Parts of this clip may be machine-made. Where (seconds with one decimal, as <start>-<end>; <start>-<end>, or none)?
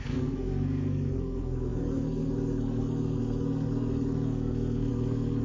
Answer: 0.0-5.4